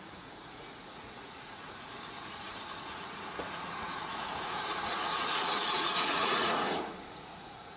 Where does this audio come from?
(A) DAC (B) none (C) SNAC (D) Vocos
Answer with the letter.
D